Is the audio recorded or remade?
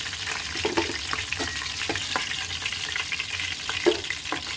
recorded